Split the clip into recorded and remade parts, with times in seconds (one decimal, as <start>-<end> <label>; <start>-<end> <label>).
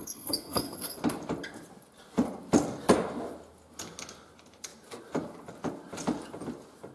0.0-1.0 remade; 1.0-6.9 recorded